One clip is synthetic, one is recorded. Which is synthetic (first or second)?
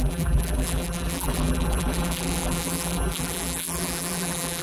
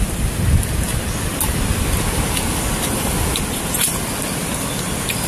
first